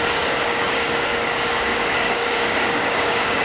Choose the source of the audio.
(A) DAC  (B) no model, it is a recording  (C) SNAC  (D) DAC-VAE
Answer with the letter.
A